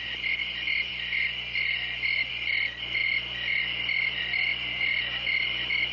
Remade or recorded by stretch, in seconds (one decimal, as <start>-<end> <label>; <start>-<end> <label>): 0.0-5.9 recorded